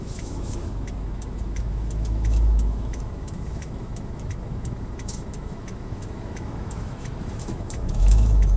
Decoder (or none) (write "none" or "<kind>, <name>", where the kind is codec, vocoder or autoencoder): autoencoder, DAC-VAE